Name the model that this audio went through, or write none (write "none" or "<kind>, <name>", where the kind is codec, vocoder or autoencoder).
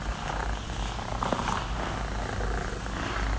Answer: none